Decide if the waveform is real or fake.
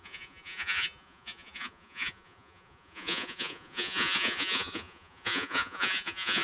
fake